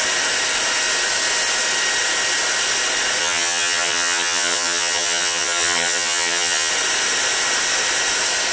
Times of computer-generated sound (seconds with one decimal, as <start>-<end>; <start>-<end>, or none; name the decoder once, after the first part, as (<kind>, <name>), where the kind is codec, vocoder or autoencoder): 3.2-6.7 (vocoder, HiFi-GAN)